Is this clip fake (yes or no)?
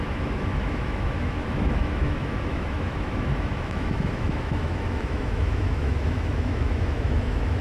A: yes